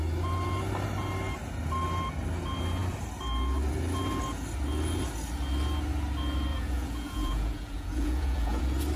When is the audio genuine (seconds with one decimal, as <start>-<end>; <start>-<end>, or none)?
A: 0.0-6.5; 8.6-9.0

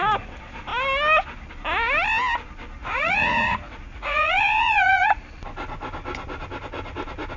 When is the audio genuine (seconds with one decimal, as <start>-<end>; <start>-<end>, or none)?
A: 0.0-2.8; 5.2-7.4

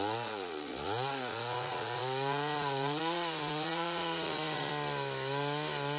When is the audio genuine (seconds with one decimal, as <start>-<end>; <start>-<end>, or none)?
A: 4.7-6.0

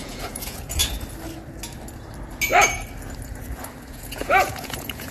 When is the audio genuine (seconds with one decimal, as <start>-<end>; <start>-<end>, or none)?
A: 0.8-3.9

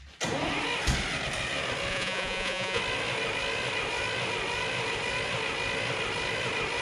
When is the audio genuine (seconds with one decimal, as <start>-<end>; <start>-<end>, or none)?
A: 0.0-1.9; 2.8-6.8

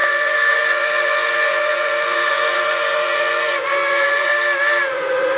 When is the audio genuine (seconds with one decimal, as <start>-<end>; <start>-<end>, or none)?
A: 4.3-4.9